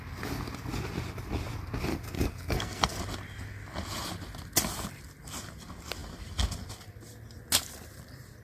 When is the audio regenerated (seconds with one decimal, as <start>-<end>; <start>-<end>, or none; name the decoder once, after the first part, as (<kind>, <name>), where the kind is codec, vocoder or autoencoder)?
1.9-3.0 (codec, SNAC)